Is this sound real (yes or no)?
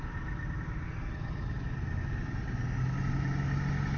yes